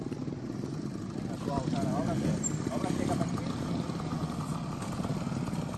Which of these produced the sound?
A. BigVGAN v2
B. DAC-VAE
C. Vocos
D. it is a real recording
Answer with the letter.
D